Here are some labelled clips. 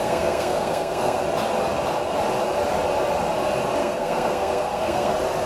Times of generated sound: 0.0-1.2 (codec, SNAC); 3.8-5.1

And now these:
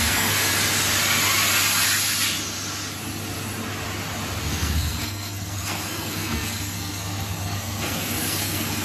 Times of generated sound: 0.0-0.5 (codec, SNAC); 4.4-8.8

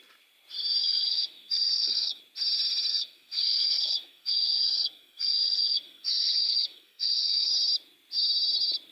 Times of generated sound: 0.8-2.2 (codec, SNAC); 2.9-7.5

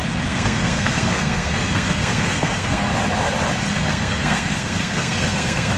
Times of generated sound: 0.0-2.9 (codec, SNAC); 3.7-5.8

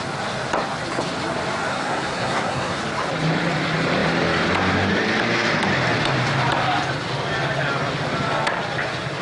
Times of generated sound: 1.7-2.8 (codec, SNAC)

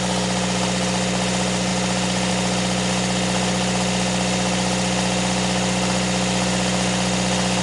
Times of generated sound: none

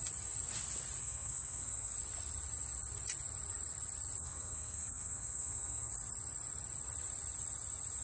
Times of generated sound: 1.0-1.9 (codec, SNAC); 4.2-5.9

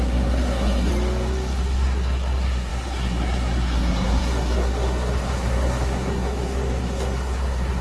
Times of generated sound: 0.0-0.9 (codec, SNAC); 1.6-7.8